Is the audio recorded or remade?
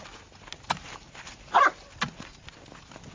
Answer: recorded